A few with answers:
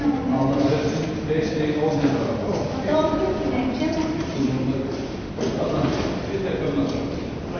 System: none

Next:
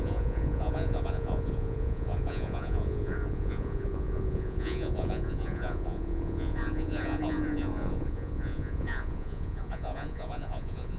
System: vocoder, Vocos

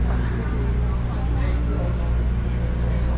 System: none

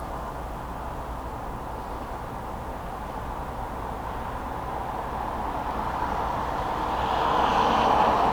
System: none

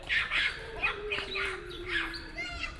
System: vocoder, BigVGAN v2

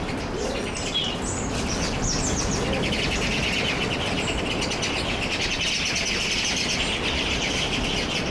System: none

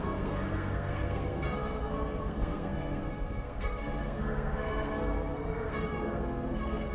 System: codec, SNAC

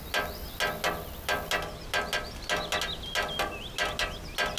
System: none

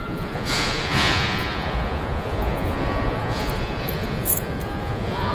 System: vocoder, Vocos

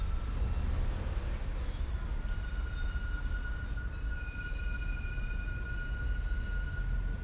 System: none